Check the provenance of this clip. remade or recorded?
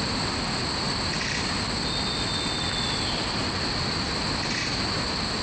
recorded